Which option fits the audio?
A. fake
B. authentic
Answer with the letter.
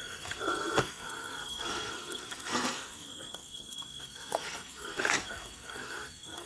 A